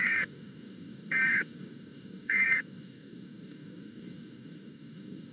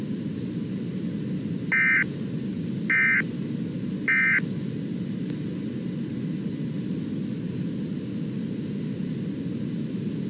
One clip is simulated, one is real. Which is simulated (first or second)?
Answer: first